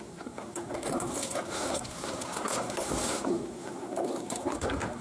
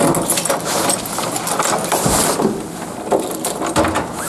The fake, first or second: first